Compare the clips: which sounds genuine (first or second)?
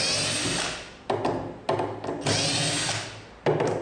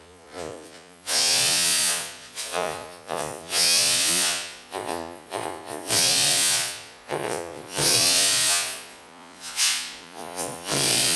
first